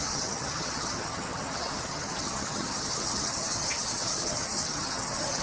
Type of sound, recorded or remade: remade